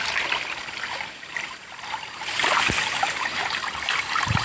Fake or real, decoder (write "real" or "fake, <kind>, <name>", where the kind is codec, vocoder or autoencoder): real